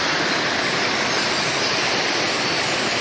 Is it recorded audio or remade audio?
recorded